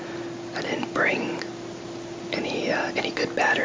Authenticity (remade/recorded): recorded